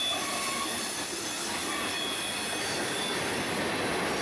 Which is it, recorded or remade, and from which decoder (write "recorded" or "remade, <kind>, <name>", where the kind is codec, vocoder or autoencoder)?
recorded